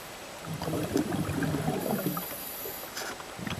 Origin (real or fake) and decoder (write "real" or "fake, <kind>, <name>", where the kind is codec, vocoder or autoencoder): real